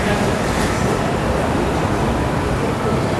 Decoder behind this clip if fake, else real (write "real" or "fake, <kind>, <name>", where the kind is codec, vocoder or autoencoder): fake, vocoder, BigVGAN v2